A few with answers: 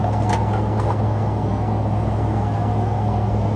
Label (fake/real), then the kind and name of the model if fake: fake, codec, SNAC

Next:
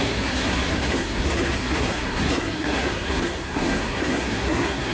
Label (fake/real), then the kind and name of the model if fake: fake, codec, SNAC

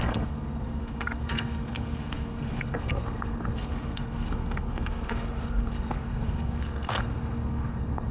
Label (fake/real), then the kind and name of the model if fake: fake, codec, SNAC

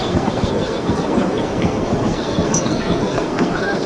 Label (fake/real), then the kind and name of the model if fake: fake, codec, SNAC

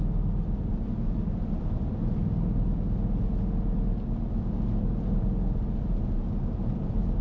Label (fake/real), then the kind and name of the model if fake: real